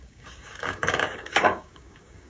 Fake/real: fake